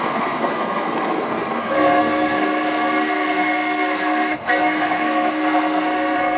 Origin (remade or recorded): remade